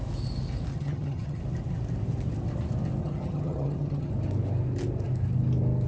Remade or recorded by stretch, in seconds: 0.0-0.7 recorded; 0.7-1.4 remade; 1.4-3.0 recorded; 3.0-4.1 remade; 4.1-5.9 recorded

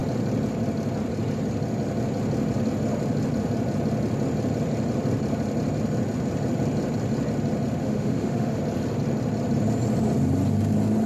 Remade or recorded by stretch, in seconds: 0.0-7.8 recorded; 7.8-8.6 remade; 8.6-11.1 recorded

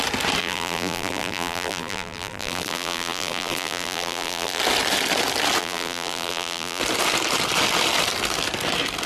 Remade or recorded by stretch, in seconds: 0.0-0.4 recorded; 0.4-4.6 remade; 4.6-5.6 recorded; 5.6-6.8 remade; 6.8-9.1 recorded

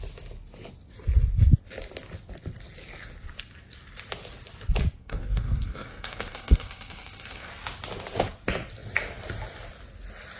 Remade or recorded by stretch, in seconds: 0.0-5.0 recorded; 5.0-7.5 remade; 7.5-10.4 recorded